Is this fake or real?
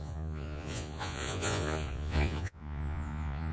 fake